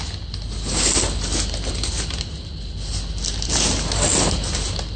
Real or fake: real